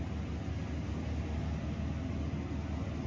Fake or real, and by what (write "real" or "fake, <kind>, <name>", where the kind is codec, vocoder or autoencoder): real